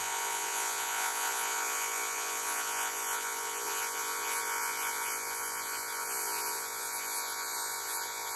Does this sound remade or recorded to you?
remade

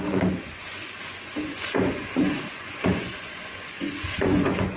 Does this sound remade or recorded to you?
remade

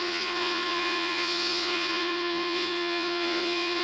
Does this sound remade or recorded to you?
remade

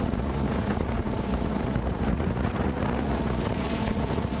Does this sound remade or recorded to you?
remade